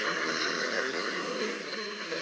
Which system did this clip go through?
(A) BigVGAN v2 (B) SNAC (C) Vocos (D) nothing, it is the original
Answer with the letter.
B